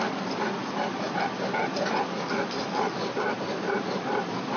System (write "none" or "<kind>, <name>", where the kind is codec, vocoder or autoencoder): none